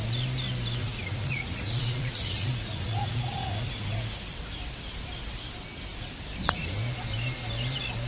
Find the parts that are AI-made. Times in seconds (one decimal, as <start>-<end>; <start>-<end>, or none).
0.8-3.7